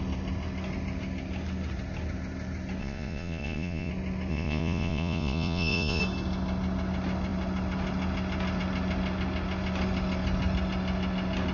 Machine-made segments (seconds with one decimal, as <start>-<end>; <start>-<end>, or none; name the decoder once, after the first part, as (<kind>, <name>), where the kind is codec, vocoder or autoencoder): 2.8-3.9 (vocoder, Vocos); 4.3-6.0